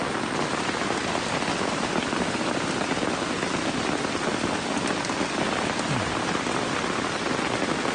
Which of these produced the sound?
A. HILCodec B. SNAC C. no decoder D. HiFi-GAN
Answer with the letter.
C